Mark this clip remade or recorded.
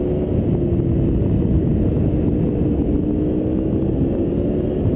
recorded